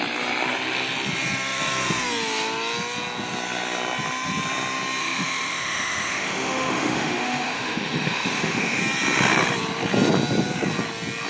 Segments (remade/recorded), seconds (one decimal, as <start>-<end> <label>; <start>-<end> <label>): 0.0-5.0 recorded; 5.0-8.8 remade; 8.8-11.3 recorded